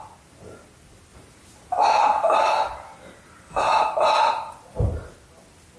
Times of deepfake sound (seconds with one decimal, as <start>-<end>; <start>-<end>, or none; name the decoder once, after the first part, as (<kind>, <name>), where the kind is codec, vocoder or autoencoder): 1.1-2.0 (vocoder, BigVGAN v2)